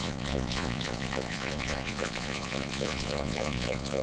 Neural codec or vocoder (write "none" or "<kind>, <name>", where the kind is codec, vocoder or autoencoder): vocoder, Vocos